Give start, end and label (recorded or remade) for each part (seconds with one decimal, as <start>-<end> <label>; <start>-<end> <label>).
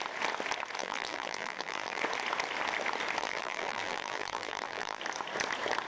0.0-0.8 recorded; 0.8-2.0 remade; 2.0-3.2 recorded; 3.2-5.0 remade; 5.0-5.9 recorded